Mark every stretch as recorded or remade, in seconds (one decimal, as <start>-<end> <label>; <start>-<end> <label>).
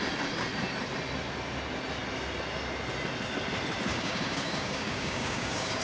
0.0-3.9 recorded; 3.9-5.8 remade